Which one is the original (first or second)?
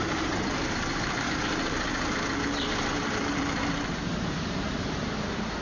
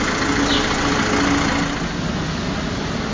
second